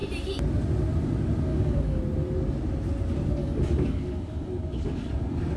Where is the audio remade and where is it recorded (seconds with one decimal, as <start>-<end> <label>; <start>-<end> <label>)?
0.0-1.5 recorded; 1.5-2.0 remade; 2.0-3.4 recorded; 3.4-5.1 remade; 5.1-5.6 recorded